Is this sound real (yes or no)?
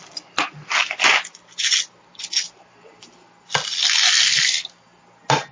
yes